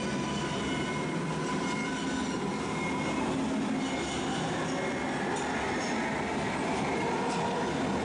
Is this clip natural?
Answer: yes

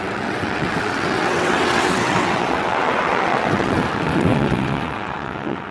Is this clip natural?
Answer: no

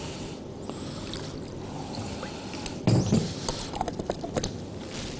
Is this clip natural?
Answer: yes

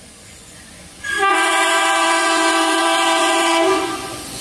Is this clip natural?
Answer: no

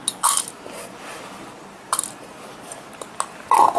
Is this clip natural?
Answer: yes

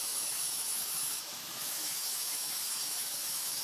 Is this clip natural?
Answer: no